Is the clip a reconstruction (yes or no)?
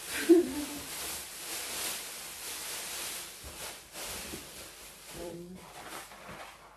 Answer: yes